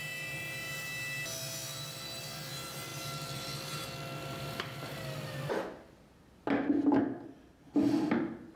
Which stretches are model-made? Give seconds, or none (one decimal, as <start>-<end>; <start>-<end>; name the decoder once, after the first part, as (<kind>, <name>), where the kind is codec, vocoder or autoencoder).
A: none